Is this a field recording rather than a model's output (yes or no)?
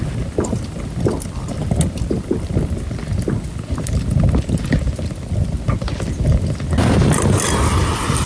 yes